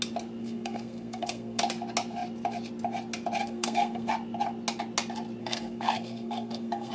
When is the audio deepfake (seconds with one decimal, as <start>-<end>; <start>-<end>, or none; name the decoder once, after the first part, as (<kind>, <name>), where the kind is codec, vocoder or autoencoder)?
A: 0.4-1.6 (codec, SNAC); 3.4-4.1; 5.4-6.9